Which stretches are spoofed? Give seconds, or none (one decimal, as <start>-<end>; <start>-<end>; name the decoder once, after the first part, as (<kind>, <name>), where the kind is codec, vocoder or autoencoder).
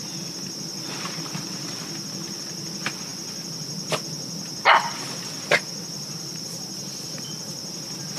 none